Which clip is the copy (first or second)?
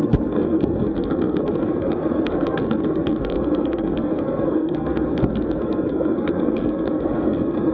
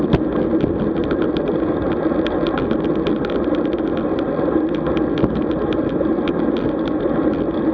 first